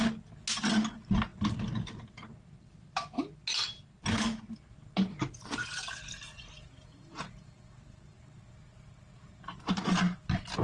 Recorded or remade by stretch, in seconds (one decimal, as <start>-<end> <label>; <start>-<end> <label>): 0.0-10.6 recorded